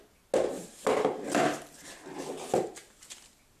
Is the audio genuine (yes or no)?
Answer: yes